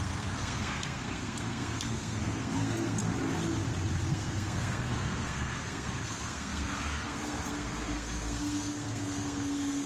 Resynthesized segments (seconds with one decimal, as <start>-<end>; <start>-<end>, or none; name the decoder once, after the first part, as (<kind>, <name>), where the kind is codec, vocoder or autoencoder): 0.0-3.0 (codec, SNAC); 4.1-9.9